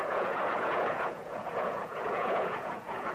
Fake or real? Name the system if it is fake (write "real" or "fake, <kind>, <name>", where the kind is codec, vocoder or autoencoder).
fake, vocoder, Vocos